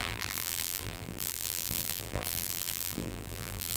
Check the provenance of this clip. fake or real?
fake